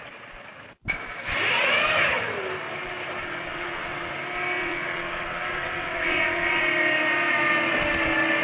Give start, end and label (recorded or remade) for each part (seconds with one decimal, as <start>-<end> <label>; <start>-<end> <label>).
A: 0.0-3.2 recorded; 3.2-4.1 remade; 4.1-4.6 recorded; 4.6-6.6 remade; 6.6-8.4 recorded